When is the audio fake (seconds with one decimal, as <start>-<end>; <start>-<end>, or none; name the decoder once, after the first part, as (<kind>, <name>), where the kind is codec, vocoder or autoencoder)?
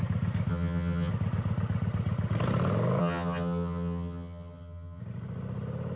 0.5-1.1 (vocoder, HiFi-GAN); 3.0-5.0